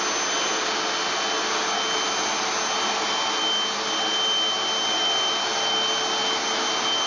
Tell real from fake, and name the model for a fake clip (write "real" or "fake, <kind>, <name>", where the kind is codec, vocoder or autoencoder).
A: real